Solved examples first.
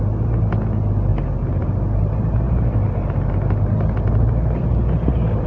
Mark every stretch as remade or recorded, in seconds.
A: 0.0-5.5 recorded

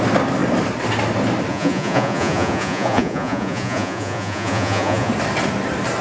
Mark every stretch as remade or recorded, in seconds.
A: 0.0-1.5 recorded; 1.5-5.1 remade; 5.1-6.0 recorded

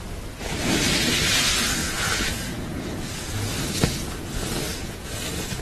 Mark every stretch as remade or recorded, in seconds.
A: 0.0-1.8 recorded; 1.8-3.5 remade; 3.5-4.7 recorded; 4.7-5.6 remade

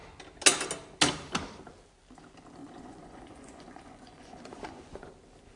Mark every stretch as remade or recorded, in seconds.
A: 0.0-2.6 recorded; 2.6-5.1 remade; 5.1-5.6 recorded

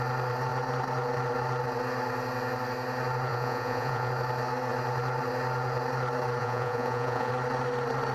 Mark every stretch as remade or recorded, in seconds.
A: 0.0-3.3 recorded; 3.3-4.1 remade; 4.1-6.4 recorded; 6.4-7.3 remade; 7.3-8.1 recorded

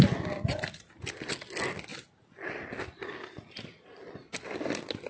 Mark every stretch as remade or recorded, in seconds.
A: 0.0-5.1 recorded

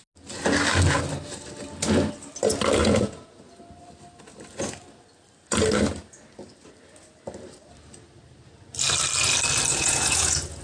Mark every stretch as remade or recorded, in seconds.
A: 0.0-2.8 recorded; 2.8-3.5 remade; 3.5-9.7 recorded; 9.7-10.6 remade